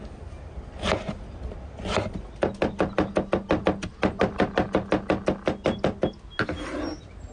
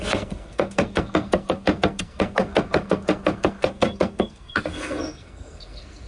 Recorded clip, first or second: first